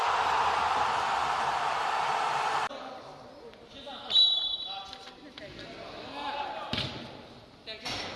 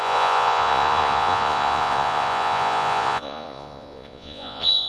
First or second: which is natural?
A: first